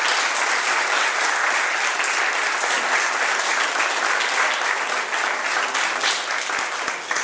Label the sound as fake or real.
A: real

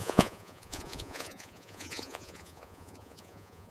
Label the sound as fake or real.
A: fake